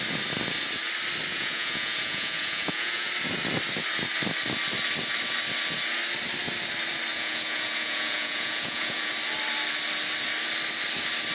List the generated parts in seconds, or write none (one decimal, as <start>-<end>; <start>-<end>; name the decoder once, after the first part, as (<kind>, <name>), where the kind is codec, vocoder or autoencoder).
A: 1.3-3.1 (vocoder, Vocos); 7.1-9.1

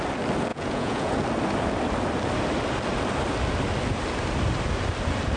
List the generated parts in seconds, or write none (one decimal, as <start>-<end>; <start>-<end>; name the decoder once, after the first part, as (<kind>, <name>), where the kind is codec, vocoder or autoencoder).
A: 0.5-1.1 (vocoder, Vocos)

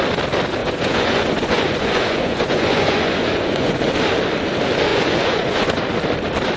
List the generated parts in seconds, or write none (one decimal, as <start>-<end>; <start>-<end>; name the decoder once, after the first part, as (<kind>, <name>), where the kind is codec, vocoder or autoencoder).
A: 0.6-3.8 (vocoder, Vocos); 4.9-5.8

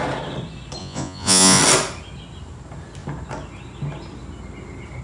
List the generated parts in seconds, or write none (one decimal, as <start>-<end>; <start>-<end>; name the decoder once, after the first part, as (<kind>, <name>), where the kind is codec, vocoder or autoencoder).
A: 0.8-1.6 (vocoder, Vocos)

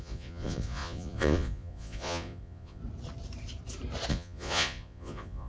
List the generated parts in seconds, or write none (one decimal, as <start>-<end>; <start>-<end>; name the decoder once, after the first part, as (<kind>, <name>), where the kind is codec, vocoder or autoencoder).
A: 0.0-2.8 (vocoder, Vocos); 4.1-5.5

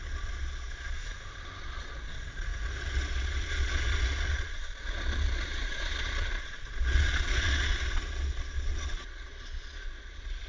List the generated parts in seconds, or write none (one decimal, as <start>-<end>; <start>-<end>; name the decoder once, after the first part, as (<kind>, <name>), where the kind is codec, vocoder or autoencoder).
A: 0.0-1.0 (vocoder, Vocos); 1.6-10.5

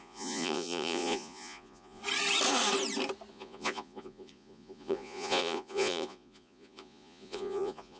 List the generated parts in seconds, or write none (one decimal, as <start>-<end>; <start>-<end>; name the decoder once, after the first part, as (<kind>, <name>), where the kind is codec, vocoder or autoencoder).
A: 0.0-2.0 (vocoder, Vocos); 3.3-8.0